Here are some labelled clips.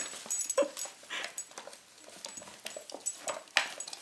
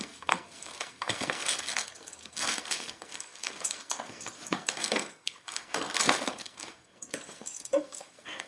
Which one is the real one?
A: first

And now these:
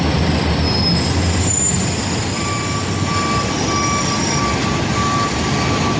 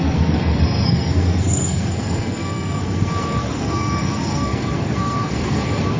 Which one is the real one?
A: first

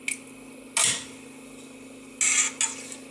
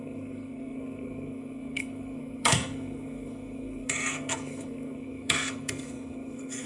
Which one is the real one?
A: first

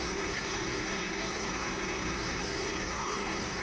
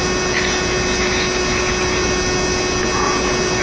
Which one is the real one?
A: second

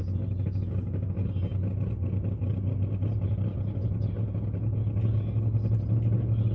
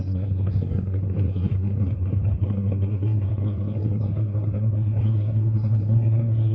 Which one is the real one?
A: first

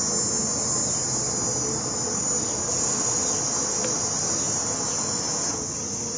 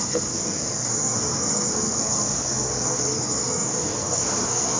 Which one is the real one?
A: first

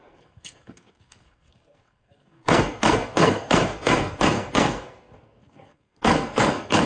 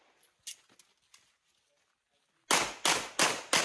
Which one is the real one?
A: second